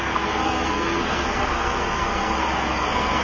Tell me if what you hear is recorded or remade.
remade